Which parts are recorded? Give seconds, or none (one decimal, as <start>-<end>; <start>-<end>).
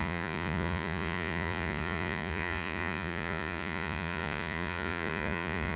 none